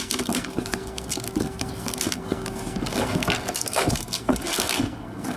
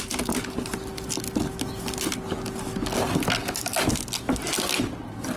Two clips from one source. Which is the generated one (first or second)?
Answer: first